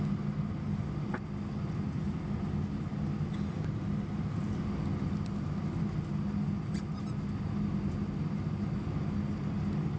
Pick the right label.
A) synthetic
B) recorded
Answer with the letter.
B